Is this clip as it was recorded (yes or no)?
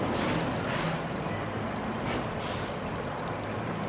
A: yes